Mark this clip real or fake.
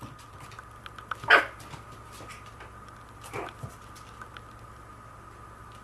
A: real